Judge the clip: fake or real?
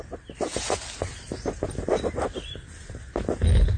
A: real